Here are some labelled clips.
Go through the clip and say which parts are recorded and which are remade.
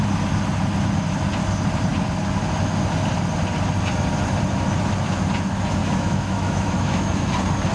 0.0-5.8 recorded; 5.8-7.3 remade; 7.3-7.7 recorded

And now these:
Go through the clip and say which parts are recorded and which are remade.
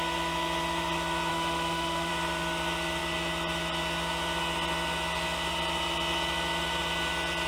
0.0-1.3 recorded; 1.3-2.1 remade; 2.1-7.5 recorded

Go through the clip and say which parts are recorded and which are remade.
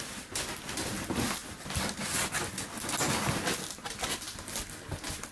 0.0-5.3 recorded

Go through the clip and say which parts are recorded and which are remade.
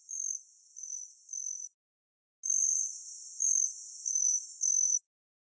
0.0-4.1 recorded; 4.1-5.1 remade; 5.1-5.6 recorded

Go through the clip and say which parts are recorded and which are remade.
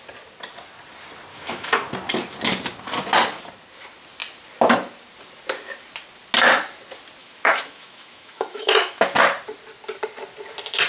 0.0-1.3 recorded; 1.3-1.9 remade; 1.9-7.2 recorded; 7.2-9.0 remade; 9.0-10.9 recorded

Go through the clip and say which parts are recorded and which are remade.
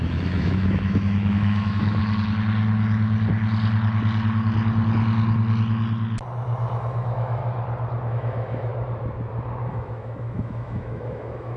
0.0-2.0 remade; 2.0-6.8 recorded; 6.8-7.4 remade; 7.4-8.1 recorded; 8.1-8.7 remade; 8.7-9.7 recorded; 9.7-11.6 remade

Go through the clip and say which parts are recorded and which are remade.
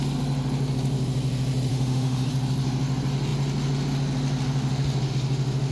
0.0-1.7 recorded; 1.7-2.3 remade; 2.3-5.7 recorded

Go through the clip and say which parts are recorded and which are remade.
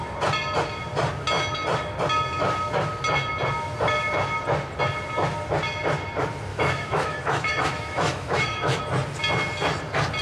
0.0-6.5 recorded; 6.5-8.8 remade; 8.8-10.2 recorded